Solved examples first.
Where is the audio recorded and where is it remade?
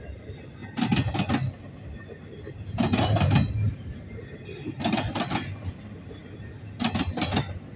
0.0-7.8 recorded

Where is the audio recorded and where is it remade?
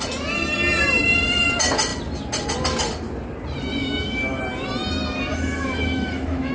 0.0-3.8 recorded; 3.8-4.4 remade; 4.4-5.3 recorded; 5.3-6.5 remade